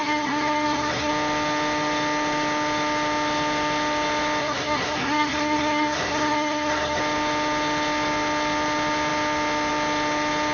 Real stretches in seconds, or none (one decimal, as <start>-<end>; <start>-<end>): 1.1-4.4; 7.0-10.5